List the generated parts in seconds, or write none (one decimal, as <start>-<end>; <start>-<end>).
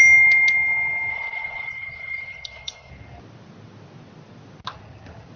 1.1-2.9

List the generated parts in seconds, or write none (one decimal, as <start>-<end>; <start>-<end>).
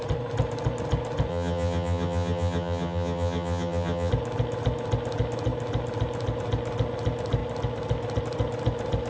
1.3-4.1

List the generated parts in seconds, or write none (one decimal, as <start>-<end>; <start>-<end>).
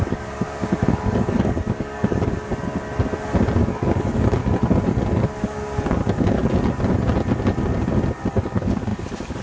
0.0-2.5; 3.8-4.4; 5.2-6.4; 8.3-9.4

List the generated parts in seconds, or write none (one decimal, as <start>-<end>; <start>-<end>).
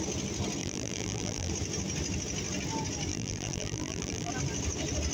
0.6-1.5; 3.1-4.3